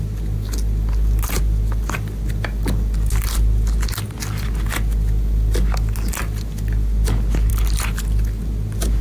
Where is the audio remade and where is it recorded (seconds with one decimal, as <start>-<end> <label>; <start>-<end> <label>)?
0.0-9.0 recorded